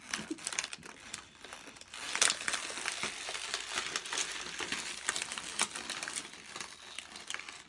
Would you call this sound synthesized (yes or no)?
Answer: no